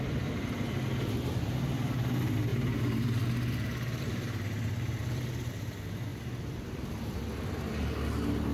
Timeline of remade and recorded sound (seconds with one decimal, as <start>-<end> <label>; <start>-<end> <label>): 0.0-2.5 recorded; 2.5-5.5 remade; 5.5-8.5 recorded